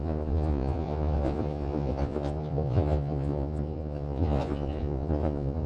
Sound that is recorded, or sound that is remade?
remade